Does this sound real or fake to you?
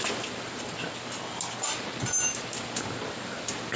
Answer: real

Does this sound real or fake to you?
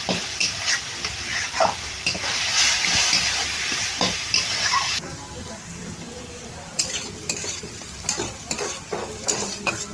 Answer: fake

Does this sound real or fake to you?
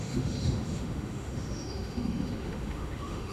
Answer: fake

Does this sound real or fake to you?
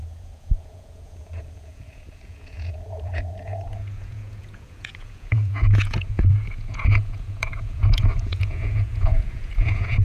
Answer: fake